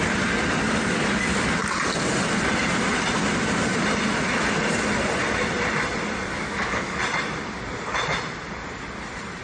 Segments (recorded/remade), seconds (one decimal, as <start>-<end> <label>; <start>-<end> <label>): 0.0-6.3 recorded; 6.3-7.0 remade; 7.0-9.4 recorded